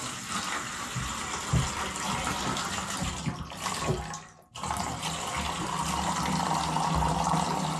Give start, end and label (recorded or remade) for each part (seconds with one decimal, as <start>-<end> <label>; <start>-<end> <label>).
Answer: 0.0-7.8 recorded